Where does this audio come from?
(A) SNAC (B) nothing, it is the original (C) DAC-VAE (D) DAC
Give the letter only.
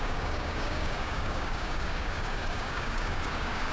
D